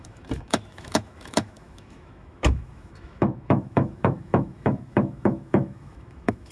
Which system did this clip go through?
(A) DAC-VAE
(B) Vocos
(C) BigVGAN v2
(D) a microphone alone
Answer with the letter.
A